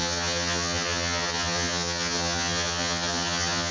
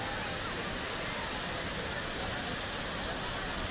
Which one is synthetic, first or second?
first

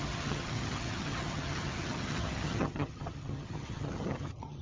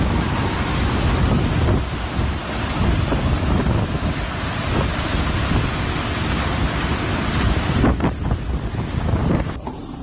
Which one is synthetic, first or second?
first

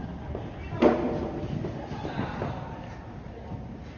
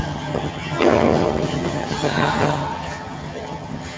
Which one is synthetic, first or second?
second